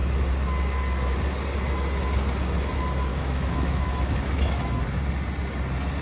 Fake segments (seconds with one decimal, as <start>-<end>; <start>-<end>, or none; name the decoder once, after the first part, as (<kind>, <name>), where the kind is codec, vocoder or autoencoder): 3.1-4.8 (autoencoder, DAC-VAE)